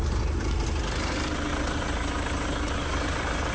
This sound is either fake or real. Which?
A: real